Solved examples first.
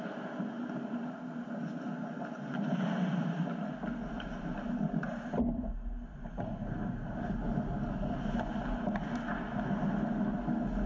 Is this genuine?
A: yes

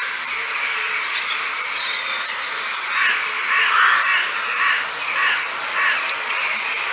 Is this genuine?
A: yes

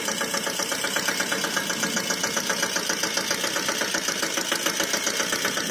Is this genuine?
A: yes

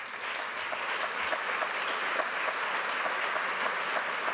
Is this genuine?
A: yes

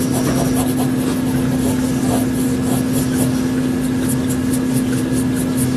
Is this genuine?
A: yes